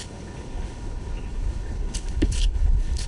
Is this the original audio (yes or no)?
no